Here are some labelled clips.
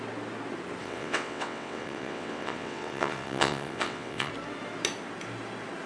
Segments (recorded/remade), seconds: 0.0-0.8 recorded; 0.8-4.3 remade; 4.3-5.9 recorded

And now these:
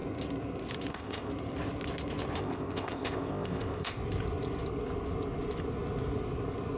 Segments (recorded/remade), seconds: 0.0-0.9 recorded; 0.9-1.3 remade; 1.3-2.4 recorded; 2.4-4.0 remade; 4.0-6.8 recorded

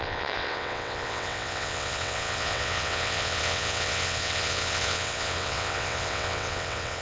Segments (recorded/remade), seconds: 0.0-7.0 remade

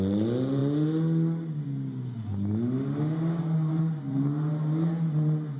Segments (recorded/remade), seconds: 0.0-5.6 recorded

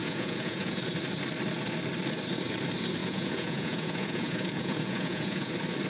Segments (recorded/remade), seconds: 0.0-0.8 remade; 0.8-3.0 recorded; 3.0-5.5 remade; 5.5-5.9 recorded

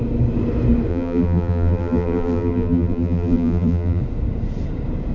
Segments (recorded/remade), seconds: 0.0-0.9 recorded; 0.9-4.0 remade; 4.0-5.1 recorded

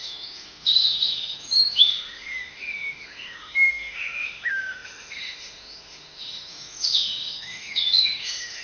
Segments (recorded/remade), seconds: 0.0-8.6 remade

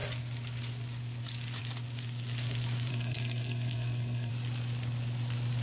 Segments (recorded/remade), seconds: 0.0-2.9 recorded; 2.9-4.3 remade; 4.3-5.6 recorded